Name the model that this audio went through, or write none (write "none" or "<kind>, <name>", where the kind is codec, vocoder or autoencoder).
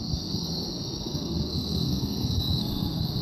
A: codec, SNAC